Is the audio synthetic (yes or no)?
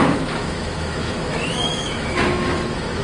yes